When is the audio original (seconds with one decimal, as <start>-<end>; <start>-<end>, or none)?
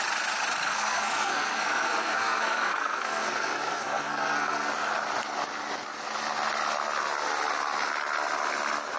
0.0-0.6; 4.7-9.0